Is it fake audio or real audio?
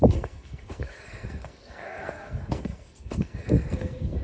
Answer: fake